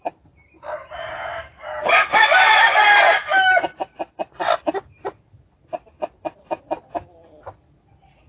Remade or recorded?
recorded